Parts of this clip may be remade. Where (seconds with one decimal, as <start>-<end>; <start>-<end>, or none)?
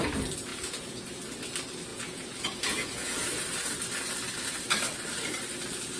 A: 0.5-1.0; 1.9-3.4